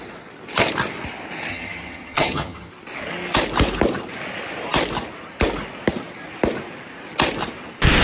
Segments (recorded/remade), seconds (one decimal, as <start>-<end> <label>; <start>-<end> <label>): 0.0-1.5 recorded; 1.5-2.7 remade; 2.7-8.0 recorded